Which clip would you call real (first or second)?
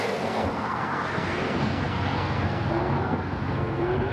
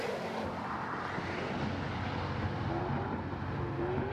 second